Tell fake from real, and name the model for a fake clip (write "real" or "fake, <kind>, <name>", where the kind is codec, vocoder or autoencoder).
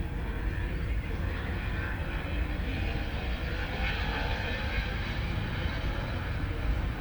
fake, vocoder, BigVGAN v2